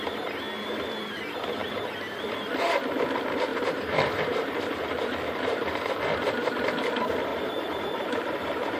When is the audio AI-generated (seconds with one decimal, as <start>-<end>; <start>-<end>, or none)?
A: 3.5-6.8; 7.3-8.8